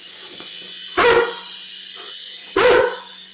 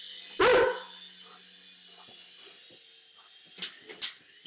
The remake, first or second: first